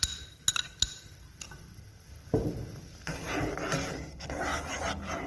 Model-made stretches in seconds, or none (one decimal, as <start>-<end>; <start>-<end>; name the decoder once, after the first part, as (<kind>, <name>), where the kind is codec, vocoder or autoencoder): none